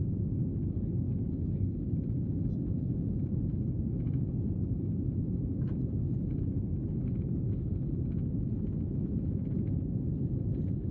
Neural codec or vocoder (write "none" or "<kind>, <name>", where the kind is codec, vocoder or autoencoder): none